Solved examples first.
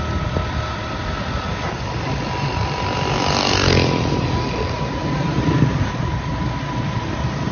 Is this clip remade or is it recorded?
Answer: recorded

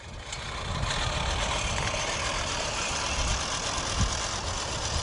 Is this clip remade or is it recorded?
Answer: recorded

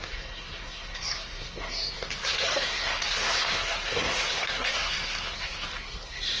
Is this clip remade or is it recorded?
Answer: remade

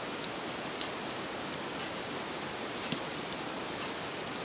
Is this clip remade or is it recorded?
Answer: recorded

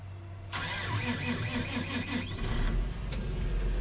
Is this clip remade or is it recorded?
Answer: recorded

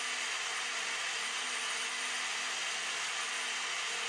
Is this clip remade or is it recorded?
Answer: recorded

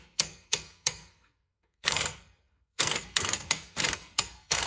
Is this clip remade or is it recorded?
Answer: remade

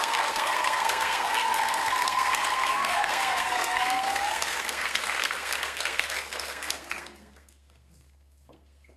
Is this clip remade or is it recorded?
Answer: remade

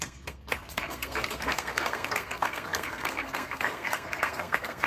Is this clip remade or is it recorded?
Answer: remade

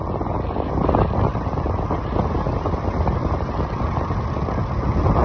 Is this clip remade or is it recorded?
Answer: recorded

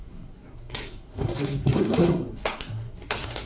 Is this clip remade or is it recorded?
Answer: remade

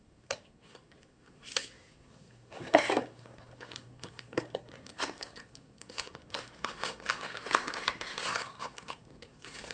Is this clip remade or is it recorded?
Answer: remade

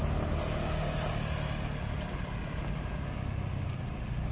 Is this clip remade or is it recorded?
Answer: recorded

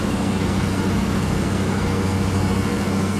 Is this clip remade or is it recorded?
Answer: remade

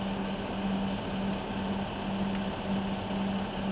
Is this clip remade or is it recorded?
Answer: recorded